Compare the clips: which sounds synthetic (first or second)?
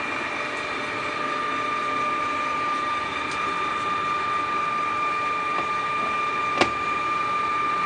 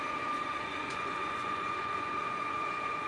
second